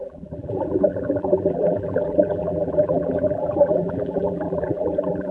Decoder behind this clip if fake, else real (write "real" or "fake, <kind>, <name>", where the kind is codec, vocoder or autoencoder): fake, vocoder, BigVGAN v2